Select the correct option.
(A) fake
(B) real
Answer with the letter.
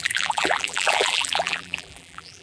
A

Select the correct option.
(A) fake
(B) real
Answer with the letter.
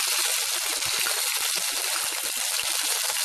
B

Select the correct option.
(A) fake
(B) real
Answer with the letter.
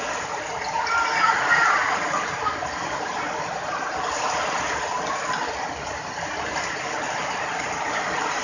B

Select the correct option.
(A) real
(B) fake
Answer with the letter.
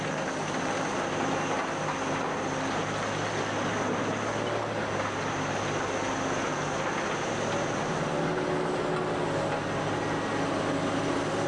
A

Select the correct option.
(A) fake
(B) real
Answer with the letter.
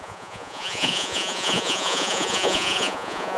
A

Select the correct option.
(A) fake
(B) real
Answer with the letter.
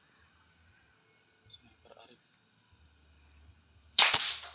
B